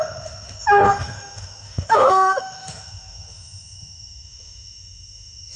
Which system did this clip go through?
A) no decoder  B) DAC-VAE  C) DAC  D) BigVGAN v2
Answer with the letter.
B